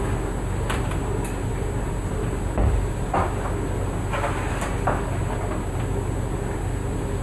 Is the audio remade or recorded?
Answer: recorded